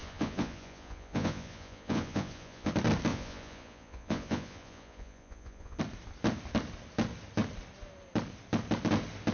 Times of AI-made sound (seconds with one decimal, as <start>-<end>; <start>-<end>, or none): 0.0-2.7; 3.1-5.8

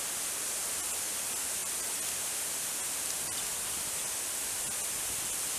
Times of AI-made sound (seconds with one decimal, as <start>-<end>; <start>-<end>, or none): none

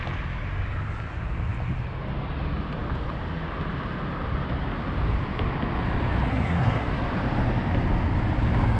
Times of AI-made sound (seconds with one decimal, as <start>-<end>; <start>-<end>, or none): 6.3-7.0

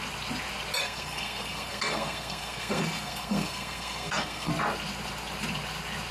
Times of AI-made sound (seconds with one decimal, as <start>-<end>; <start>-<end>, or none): 0.8-4.5

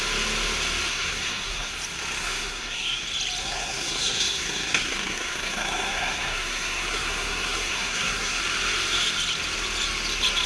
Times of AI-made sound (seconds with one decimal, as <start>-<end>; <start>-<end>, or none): 0.9-1.7; 2.2-3.0; 3.4-8.4